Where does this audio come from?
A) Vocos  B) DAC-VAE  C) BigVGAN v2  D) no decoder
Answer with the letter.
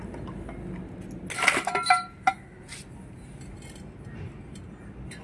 D